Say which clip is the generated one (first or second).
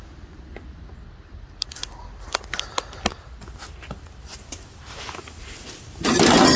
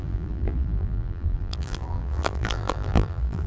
second